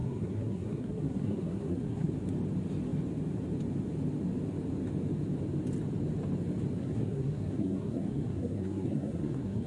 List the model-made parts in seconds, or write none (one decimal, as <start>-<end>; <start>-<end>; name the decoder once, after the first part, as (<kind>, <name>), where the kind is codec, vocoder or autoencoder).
0.0-2.1 (codec, SNAC); 6.8-9.7